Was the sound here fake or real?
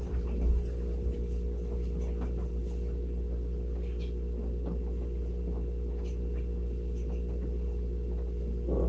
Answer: real